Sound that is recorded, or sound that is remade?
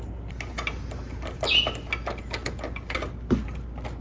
recorded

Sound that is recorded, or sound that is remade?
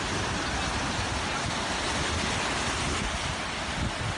recorded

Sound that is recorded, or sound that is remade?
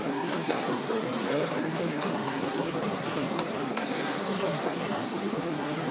remade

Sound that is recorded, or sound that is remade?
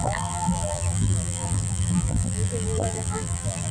remade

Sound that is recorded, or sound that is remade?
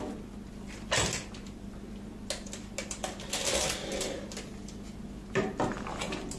recorded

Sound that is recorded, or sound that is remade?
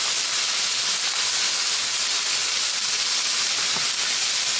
recorded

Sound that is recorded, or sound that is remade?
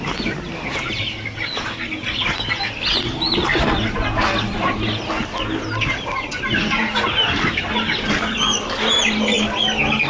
recorded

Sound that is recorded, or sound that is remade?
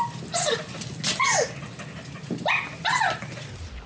recorded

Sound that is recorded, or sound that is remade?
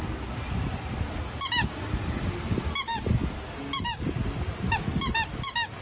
recorded